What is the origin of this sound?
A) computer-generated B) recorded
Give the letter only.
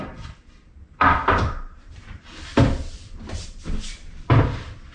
A